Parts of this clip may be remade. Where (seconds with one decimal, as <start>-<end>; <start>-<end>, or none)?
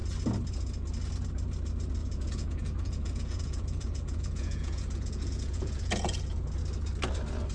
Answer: 2.0-6.5